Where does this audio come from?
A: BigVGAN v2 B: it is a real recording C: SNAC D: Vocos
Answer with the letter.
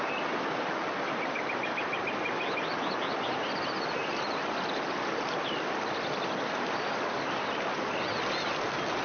B